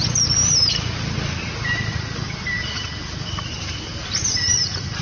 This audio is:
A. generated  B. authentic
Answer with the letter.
A